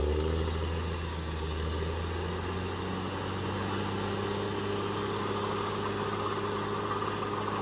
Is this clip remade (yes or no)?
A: no